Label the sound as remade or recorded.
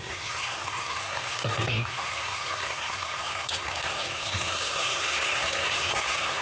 remade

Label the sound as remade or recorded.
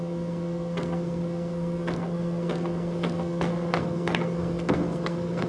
remade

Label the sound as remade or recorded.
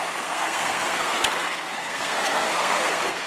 remade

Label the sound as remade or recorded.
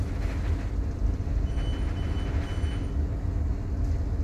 recorded